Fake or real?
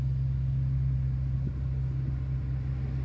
real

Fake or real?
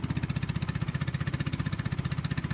fake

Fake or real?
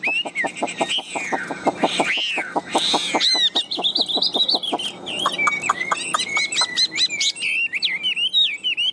real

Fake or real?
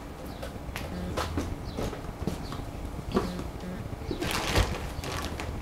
real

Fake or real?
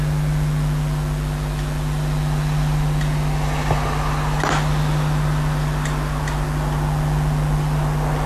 real